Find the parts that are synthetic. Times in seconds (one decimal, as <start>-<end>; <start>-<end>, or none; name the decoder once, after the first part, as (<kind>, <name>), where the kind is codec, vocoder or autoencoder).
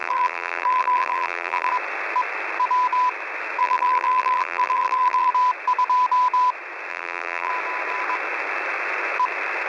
0.0-1.7 (vocoder, BigVGAN v2); 3.6-5.3; 6.9-7.5